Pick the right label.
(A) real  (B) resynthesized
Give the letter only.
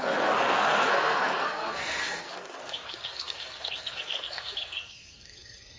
B